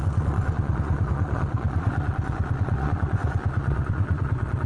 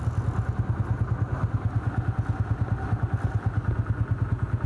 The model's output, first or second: first